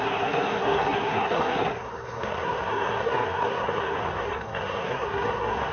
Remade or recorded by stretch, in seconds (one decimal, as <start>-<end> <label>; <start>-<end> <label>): 0.0-5.7 remade